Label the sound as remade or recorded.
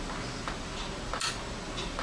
recorded